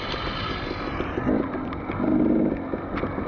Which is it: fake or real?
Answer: real